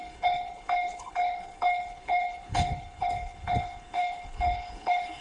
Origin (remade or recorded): remade